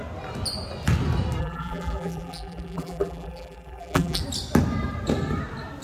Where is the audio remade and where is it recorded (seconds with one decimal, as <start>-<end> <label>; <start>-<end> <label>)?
0.0-1.4 recorded; 1.4-4.2 remade; 4.2-5.8 recorded